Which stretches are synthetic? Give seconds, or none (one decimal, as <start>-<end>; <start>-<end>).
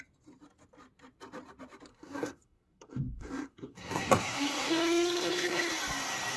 1.9-5.7